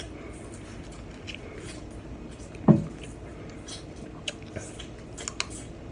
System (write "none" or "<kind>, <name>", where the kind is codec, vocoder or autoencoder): none